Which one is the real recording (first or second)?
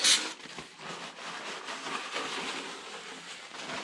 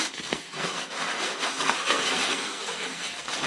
first